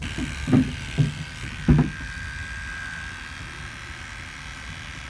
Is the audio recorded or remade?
recorded